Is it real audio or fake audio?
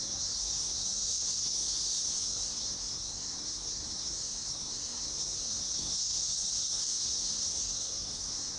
fake